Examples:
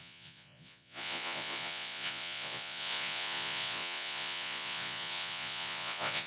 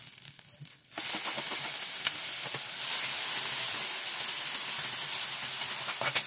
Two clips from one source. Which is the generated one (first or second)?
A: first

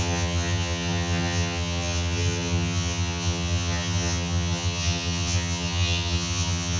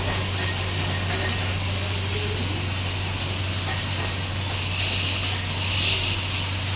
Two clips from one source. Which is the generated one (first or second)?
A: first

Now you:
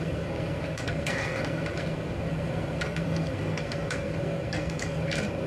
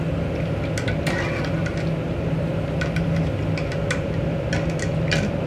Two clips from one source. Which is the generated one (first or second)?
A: first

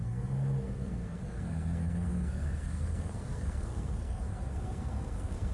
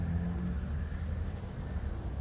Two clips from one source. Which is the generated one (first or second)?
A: first